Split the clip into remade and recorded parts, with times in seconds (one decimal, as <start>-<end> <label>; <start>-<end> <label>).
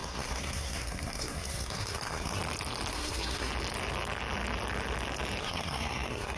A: 0.0-2.4 remade; 2.4-2.9 recorded; 2.9-3.5 remade; 3.5-5.4 recorded; 5.4-6.4 remade